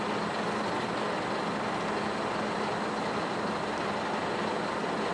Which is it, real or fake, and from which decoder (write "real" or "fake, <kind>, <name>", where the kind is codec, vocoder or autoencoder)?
real